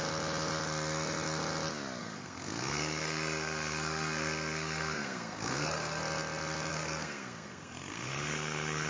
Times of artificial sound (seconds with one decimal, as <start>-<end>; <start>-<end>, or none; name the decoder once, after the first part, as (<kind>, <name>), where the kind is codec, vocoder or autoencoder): 2.0-6.0 (codec, SNAC); 6.7-8.9